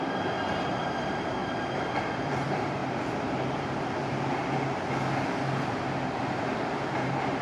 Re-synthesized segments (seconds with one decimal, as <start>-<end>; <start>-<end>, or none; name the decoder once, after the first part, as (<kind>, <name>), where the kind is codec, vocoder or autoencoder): 0.0-4.4 (vocoder, BigVGAN v2); 6.2-7.4

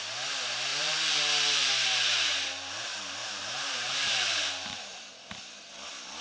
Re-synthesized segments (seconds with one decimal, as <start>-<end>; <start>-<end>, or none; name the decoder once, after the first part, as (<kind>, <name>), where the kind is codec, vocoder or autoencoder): 0.7-1.7 (vocoder, BigVGAN v2); 3.2-5.1

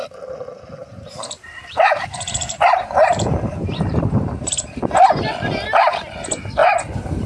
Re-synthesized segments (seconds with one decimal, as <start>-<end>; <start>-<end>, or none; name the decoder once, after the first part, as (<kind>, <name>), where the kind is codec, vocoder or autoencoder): 0.8-4.8 (vocoder, BigVGAN v2); 6.6-7.3

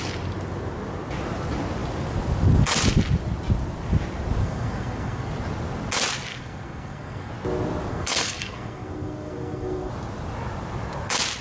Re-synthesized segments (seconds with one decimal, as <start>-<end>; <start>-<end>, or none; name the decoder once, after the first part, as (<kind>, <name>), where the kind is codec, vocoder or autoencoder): 4.4-5.3 (codec, SNAC); 6.3-7.3; 7.9-9.9

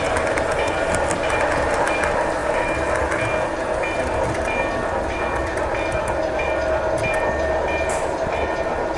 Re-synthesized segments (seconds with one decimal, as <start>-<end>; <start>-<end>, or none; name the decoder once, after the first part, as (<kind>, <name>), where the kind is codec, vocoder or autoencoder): none

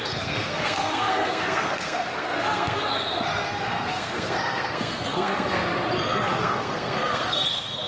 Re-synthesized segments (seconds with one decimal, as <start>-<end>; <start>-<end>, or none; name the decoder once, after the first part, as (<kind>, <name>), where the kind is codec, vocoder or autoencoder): 0.0-5.6 (codec, SNAC); 6.4-7.9

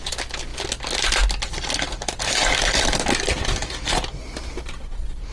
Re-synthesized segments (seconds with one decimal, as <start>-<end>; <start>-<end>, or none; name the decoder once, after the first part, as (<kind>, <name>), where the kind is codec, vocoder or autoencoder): none

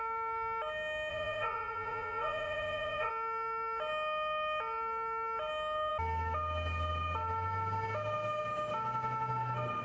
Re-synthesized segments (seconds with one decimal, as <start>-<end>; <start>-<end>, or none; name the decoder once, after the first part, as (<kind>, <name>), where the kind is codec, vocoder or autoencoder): 1.1-3.1 (vocoder, Vocos)